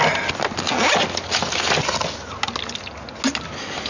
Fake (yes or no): no